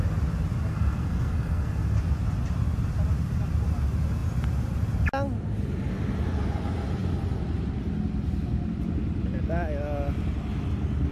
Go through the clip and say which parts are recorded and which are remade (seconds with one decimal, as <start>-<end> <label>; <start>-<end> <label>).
0.0-0.7 recorded; 0.7-2.0 remade; 2.0-11.1 recorded